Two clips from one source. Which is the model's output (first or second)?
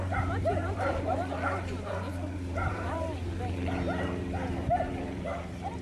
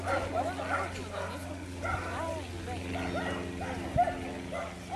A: first